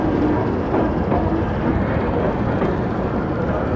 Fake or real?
real